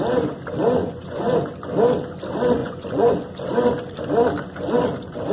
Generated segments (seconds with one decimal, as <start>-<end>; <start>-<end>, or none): 0.8-1.4; 2.6-3.1